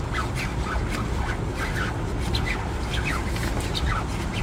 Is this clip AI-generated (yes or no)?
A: no